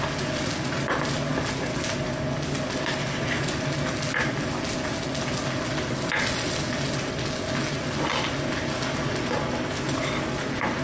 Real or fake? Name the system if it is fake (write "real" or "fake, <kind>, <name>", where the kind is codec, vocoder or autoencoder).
real